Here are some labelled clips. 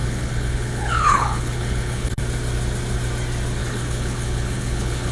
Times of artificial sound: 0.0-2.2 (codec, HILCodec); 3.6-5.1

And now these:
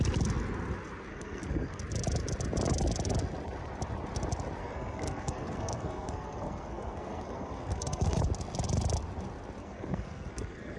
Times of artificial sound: 1.1-1.8 (codec, SNAC); 4.6-8.2; 9.6-10.8

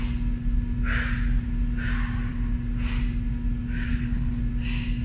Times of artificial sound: 3.9-4.4 (codec, HILCodec)

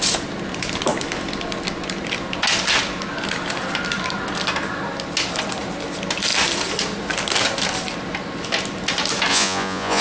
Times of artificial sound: 9.3-10.0 (vocoder, Vocos)

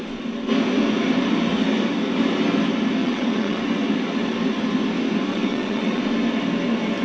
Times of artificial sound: 3.0-3.6 (vocoder, WaveNeXt); 5.3-6.0

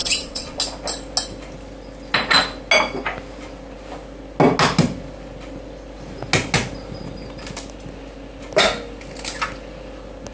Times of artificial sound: 0.0-0.6 (vocoder, WaveNeXt)